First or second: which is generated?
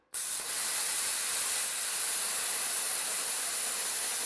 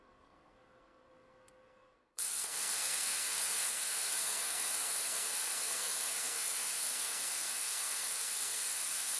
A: second